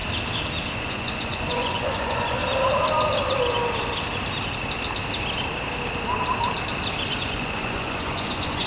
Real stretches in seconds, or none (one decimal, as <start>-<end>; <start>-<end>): 0.0-0.7; 2.4-7.2